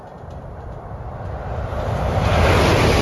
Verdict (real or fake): real